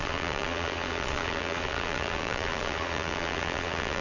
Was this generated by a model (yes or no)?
yes